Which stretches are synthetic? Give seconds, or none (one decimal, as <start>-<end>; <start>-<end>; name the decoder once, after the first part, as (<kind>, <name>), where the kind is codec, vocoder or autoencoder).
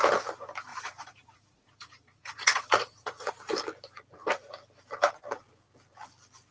0.7-3.3 (vocoder, Vocos)